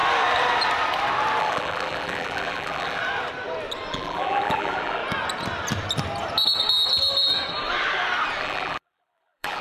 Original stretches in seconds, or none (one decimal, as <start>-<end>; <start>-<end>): 0.0-1.4; 3.0-3.9; 5.0-8.4